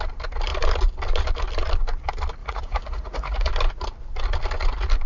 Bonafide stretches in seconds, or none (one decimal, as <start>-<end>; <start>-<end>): 0.0-2.4; 3.5-5.1

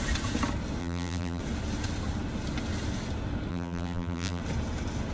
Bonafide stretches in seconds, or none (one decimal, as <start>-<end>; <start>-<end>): 0.0-0.8; 1.4-3.5; 4.4-5.1

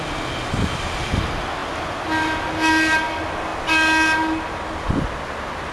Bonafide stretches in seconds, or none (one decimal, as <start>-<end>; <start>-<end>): 0.0-5.7

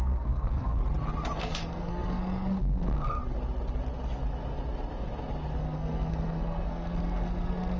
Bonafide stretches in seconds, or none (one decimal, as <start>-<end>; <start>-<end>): 0.8-1.4; 3.2-5.6

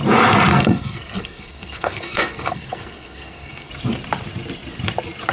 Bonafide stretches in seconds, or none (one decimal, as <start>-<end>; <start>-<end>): 0.0-0.5; 3.7-5.3

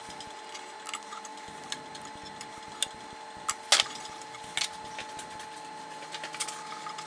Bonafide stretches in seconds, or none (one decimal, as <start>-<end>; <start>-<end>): 0.0-7.1

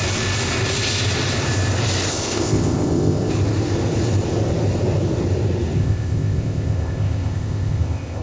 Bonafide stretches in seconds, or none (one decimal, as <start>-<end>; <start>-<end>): 0.0-2.1; 3.3-5.8

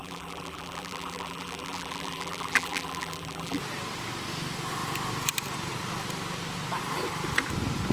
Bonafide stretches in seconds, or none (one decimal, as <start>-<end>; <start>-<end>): 3.6-7.9